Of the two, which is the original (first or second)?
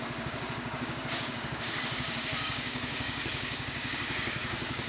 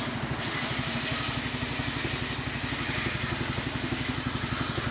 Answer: second